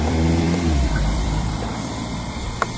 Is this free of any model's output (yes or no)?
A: no